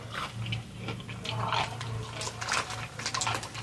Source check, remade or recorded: recorded